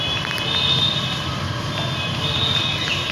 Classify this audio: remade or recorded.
recorded